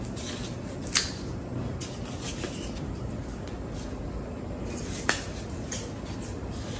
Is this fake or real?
real